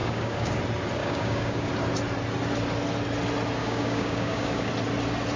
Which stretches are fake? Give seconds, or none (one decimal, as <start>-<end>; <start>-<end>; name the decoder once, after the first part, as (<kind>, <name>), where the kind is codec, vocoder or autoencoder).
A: 0.0-0.6 (codec, DAC); 1.0-1.7; 3.6-4.7